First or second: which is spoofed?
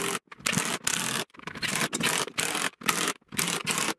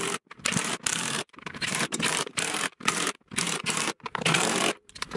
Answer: second